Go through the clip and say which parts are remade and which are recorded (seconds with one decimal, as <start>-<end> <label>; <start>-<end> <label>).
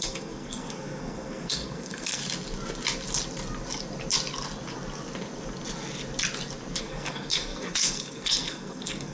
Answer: 0.0-2.2 remade; 2.2-6.8 recorded; 6.8-9.1 remade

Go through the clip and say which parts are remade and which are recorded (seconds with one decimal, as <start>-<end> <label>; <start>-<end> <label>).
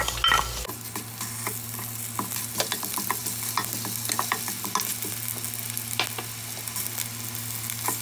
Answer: 0.0-8.0 recorded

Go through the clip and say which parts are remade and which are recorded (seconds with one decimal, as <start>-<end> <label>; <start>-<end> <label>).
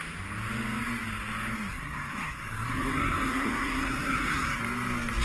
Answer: 0.0-1.7 recorded; 1.7-4.6 remade; 4.6-5.2 recorded